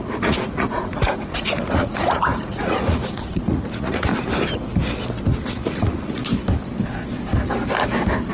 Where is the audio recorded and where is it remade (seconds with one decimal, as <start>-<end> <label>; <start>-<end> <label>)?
0.0-4.1 remade; 4.1-5.2 recorded; 5.2-6.2 remade; 6.2-8.3 recorded